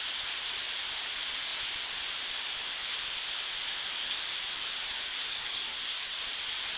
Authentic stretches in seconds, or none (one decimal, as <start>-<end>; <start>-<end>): 0.0-5.3; 6.2-6.8